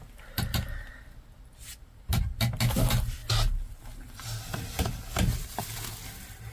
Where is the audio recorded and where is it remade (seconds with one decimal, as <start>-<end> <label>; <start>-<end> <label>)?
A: 0.0-6.5 recorded